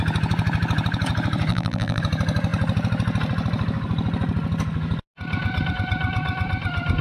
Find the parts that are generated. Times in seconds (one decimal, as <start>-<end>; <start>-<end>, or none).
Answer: 1.5-2.0

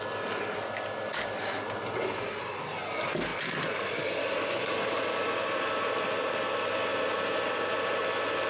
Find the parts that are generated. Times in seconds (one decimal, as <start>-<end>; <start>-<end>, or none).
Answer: none